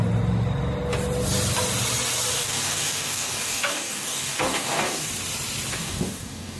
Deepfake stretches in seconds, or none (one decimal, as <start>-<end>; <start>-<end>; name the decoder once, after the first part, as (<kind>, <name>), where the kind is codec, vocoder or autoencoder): 2.3-5.1 (codec, DAC); 5.7-6.6